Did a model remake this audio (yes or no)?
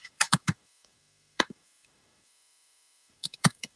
yes